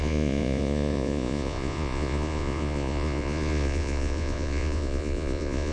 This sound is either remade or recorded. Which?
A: remade